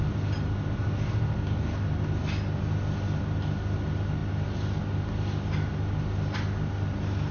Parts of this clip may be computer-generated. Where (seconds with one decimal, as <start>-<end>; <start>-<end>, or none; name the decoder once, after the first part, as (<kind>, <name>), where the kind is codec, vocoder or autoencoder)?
none